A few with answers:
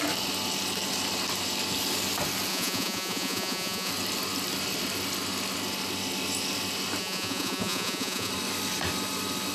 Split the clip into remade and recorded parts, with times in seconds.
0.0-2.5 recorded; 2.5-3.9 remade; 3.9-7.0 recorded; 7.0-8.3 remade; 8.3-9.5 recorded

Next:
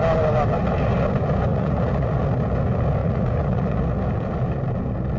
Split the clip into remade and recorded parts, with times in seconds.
0.0-1.5 recorded; 1.5-2.2 remade; 2.2-3.0 recorded; 3.0-3.8 remade; 3.8-5.2 recorded

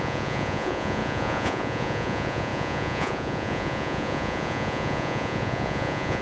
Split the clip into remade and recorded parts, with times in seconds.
0.0-6.2 remade

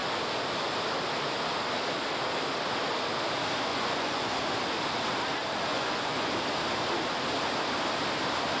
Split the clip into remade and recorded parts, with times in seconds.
0.0-3.7 recorded; 3.7-4.3 remade; 4.3-5.7 recorded; 5.7-6.3 remade; 6.3-8.6 recorded